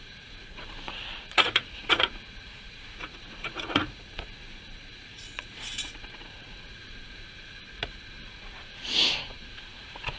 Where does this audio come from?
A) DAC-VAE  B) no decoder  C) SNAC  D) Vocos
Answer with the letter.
D